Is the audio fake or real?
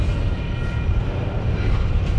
real